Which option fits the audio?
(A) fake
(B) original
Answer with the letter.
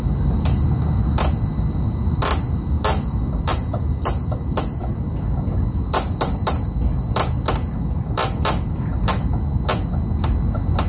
B